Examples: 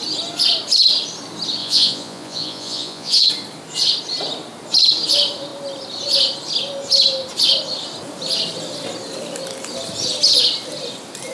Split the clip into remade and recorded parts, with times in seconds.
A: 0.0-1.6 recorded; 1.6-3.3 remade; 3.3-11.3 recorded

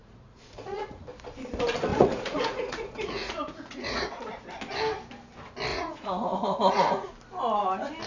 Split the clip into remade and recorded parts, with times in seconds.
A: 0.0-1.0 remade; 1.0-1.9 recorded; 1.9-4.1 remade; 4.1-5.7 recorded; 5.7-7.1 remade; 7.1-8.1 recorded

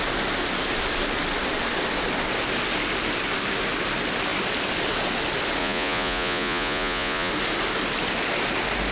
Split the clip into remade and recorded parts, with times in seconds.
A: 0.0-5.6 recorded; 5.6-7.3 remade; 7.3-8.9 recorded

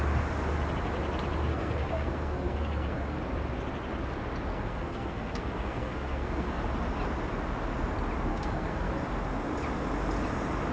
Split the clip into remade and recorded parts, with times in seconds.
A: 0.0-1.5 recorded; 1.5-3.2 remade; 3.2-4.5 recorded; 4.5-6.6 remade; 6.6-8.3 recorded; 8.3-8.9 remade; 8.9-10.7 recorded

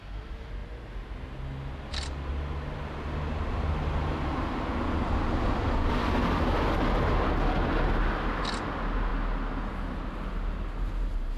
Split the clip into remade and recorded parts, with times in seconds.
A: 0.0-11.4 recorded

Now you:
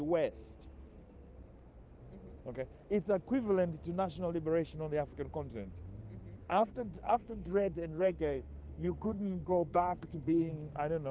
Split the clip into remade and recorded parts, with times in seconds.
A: 0.0-6.5 recorded; 6.5-10.5 remade; 10.5-11.1 recorded

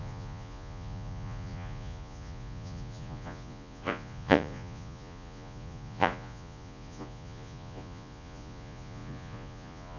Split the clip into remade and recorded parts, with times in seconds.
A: 0.0-10.0 remade